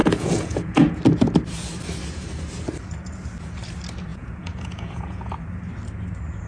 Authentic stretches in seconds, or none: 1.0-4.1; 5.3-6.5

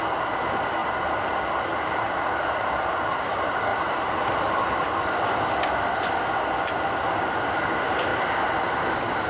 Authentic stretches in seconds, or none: 0.0-3.7; 7.7-9.3

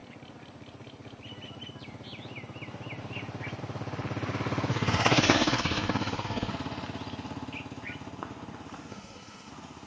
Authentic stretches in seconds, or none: 0.0-4.7; 6.5-8.9; 9.5-9.9